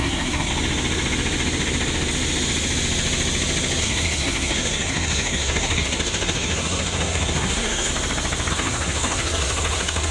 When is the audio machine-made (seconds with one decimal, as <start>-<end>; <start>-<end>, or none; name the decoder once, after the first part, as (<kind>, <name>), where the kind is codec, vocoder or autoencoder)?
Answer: 0.0-0.5 (codec, SNAC); 3.8-7.9; 8.5-10.1